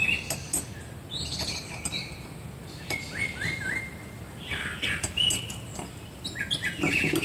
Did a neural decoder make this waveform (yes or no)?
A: no